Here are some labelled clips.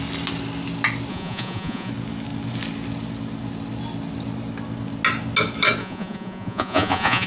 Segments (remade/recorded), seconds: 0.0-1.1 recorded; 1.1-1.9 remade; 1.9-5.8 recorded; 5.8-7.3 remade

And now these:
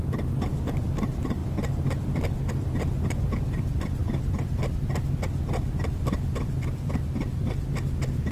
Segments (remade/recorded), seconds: 0.0-8.3 recorded

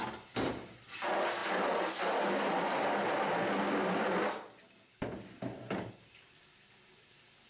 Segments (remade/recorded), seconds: 0.0-7.5 recorded

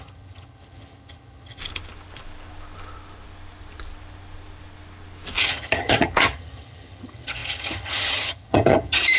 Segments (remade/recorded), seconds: 0.0-1.6 remade; 1.6-5.4 recorded; 5.4-9.2 remade

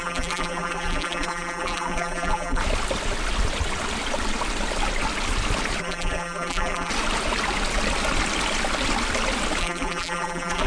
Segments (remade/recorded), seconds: 0.0-2.6 remade; 2.6-5.8 recorded; 5.8-6.9 remade; 6.9-9.6 recorded; 9.6-10.7 remade

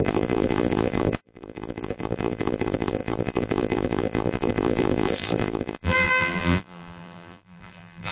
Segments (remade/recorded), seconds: 0.0-8.1 remade